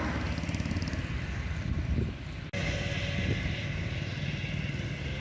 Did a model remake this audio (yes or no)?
no